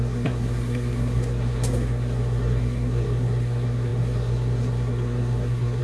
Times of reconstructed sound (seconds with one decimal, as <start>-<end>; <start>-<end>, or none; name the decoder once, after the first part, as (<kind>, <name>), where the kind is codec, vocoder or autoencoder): 0.0-5.8 (codec, SNAC)